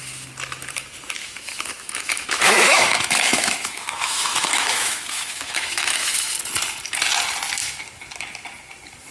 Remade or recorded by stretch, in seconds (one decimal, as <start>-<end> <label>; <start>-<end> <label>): 0.0-1.2 recorded; 1.2-6.4 remade; 6.4-9.1 recorded